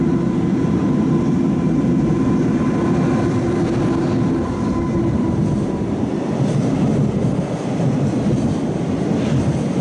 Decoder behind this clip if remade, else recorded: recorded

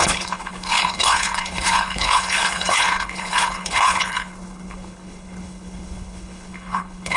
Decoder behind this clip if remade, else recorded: remade, codec, HILCodec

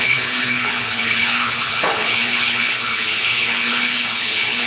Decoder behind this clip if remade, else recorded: remade, codec, HILCodec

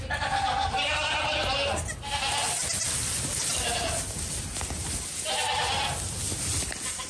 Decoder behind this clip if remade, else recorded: recorded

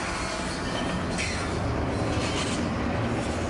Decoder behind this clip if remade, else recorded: recorded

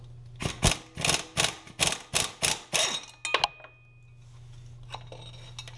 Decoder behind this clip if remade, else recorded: recorded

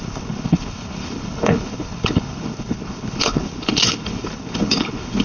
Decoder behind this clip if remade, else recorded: remade, codec, HILCodec